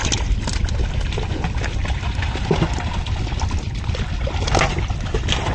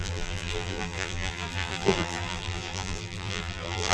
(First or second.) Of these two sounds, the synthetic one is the second